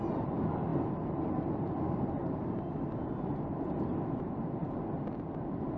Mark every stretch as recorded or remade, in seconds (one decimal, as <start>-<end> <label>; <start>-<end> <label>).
0.0-5.8 recorded